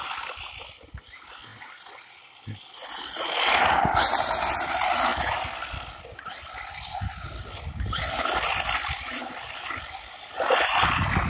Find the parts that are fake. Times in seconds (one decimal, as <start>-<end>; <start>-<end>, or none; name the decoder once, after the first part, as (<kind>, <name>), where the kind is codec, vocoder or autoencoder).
none